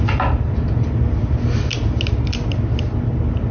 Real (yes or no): yes